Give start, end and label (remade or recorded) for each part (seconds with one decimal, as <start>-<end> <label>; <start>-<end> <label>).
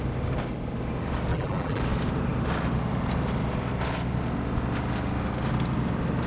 0.0-1.3 recorded; 1.3-1.8 remade; 1.8-6.3 recorded